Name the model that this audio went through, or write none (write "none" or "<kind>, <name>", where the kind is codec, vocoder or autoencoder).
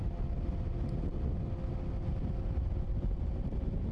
none